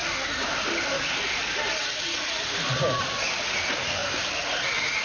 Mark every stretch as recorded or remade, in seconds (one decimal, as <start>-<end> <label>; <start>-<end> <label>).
0.0-5.0 recorded